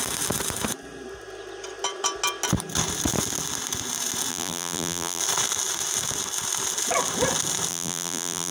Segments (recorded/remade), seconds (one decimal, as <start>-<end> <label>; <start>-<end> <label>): 0.0-4.3 recorded; 4.3-5.2 remade; 5.2-7.7 recorded; 7.7-8.5 remade